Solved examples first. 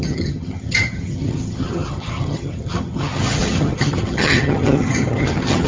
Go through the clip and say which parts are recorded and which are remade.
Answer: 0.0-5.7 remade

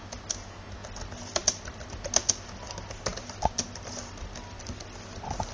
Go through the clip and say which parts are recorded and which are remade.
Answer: 0.0-5.5 recorded

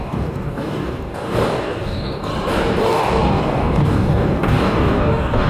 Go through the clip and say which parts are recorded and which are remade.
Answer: 0.0-2.3 remade; 2.3-2.8 recorded; 2.8-5.5 remade